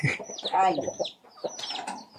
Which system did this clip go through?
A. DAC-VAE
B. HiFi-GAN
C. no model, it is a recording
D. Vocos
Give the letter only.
C